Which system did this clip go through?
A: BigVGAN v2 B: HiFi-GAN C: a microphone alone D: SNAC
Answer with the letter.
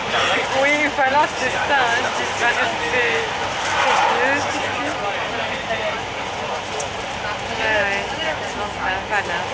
C